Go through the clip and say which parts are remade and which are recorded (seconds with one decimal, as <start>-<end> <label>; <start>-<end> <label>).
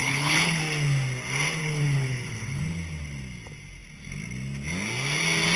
0.0-0.6 remade; 0.6-1.6 recorded; 1.6-2.6 remade; 2.6-5.6 recorded